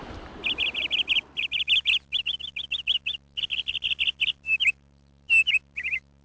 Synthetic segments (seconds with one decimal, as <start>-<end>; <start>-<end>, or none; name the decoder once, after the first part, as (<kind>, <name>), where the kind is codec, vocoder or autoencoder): 0.0-0.4 (vocoder, BigVGAN v2); 1.8-6.2